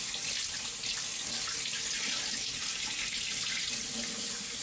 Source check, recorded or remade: recorded